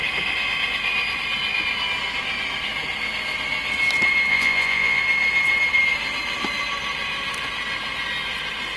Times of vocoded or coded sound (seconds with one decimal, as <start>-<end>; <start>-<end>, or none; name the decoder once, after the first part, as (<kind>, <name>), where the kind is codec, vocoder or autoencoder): 4.3-5.0 (vocoder, Vocos)